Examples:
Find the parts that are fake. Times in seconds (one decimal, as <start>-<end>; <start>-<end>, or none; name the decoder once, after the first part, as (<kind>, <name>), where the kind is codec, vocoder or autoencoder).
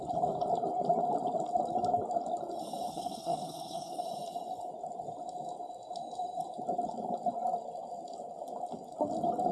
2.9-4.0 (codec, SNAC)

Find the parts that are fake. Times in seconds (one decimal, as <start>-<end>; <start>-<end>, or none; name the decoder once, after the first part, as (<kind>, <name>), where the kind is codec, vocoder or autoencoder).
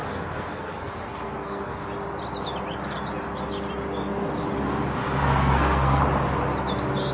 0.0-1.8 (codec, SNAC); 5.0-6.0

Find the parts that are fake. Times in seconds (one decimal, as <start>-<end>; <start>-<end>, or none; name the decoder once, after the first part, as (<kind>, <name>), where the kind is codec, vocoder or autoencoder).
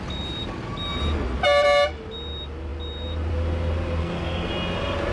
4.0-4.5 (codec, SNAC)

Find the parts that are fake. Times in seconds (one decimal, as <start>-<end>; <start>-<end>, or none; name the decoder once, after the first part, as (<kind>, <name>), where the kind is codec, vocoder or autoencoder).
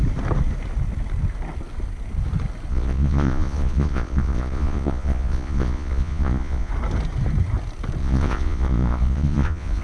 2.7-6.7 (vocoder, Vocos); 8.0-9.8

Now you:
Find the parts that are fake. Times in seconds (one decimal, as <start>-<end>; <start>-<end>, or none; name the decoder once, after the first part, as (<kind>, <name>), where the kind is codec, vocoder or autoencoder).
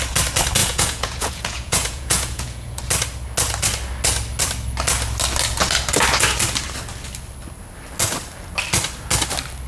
0.6-2.8 (vocoder, Vocos)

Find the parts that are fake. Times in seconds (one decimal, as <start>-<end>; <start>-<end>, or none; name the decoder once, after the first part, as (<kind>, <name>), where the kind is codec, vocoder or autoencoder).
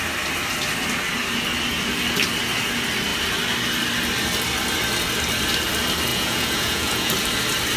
6.1-7.1 (vocoder, Vocos)